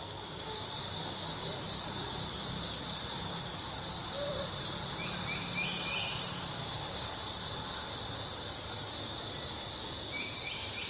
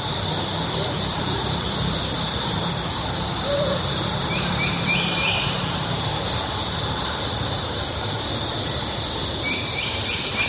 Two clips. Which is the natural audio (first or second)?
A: first